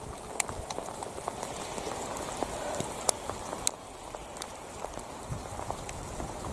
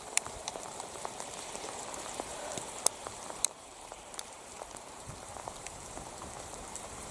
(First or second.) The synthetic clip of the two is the second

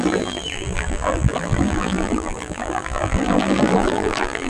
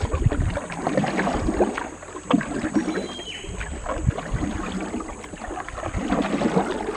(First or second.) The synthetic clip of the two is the first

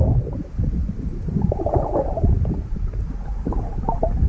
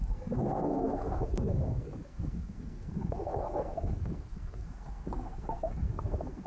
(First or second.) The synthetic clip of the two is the second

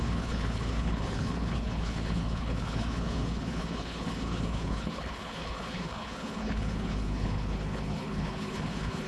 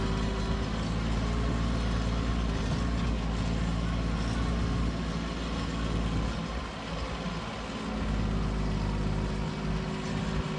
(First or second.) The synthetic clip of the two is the first